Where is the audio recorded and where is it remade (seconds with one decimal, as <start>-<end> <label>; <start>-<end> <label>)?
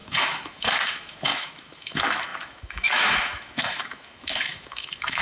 0.0-5.2 remade